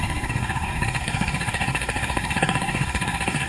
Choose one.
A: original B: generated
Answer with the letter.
B